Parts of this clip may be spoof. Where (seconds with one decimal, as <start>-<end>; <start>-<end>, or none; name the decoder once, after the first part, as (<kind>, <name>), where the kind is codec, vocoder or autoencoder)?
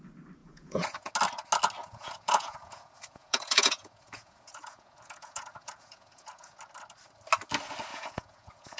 0.4-1.1 (vocoder, Vocos); 1.8-6.6; 7.9-8.8